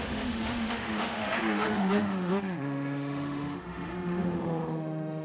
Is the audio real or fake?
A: fake